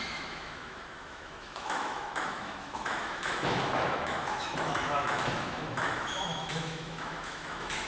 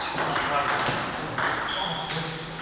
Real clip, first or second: second